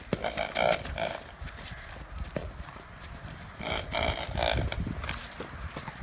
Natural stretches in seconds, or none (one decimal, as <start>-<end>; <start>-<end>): 0.0-2.4